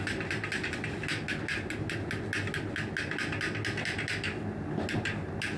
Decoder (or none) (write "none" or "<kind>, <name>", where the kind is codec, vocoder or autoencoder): none